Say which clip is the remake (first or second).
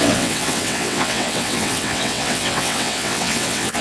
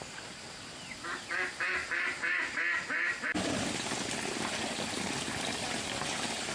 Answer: first